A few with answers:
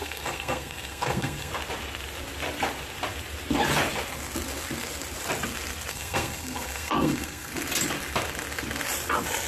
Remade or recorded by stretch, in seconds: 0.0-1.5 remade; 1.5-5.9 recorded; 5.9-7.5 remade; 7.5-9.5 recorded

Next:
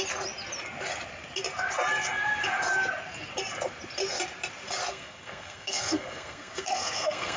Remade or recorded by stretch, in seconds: 0.0-4.9 recorded; 4.9-7.4 remade

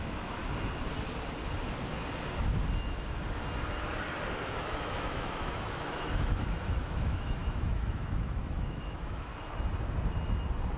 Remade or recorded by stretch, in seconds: 0.0-0.4 remade; 0.4-4.6 recorded; 4.6-9.3 remade; 9.3-10.8 recorded

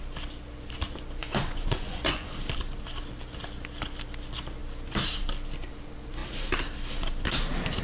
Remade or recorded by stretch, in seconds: 0.0-1.2 recorded; 1.2-2.3 remade; 2.3-7.8 recorded

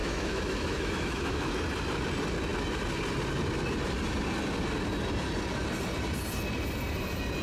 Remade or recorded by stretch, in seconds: 0.0-1.5 remade; 1.5-7.4 recorded

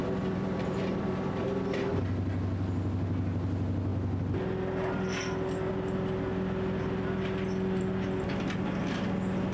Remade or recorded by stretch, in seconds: 0.0-1.4 remade; 1.4-9.5 recorded

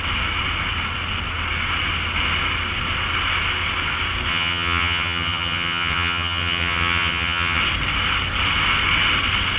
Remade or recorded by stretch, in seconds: 0.0-4.3 recorded; 4.3-7.6 remade; 7.6-9.6 recorded

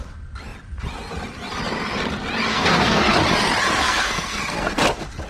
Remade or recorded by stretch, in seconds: 0.0-2.5 recorded; 2.5-3.0 remade; 3.0-3.8 recorded; 3.8-4.8 remade; 4.8-5.3 recorded